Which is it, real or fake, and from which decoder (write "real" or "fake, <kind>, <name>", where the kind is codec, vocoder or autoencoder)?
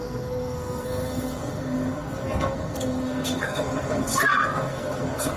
fake, codec, SNAC